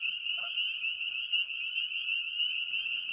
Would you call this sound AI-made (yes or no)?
no